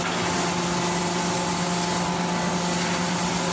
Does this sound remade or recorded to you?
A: recorded